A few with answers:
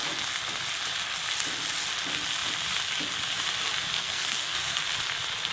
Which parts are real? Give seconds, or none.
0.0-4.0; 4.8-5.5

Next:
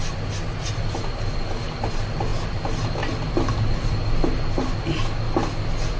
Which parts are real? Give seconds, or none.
0.0-6.0